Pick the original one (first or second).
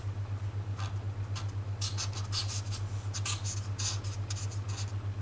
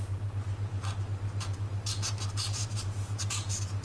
first